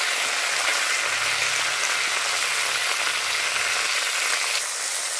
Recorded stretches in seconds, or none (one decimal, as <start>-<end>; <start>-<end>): 0.0-5.2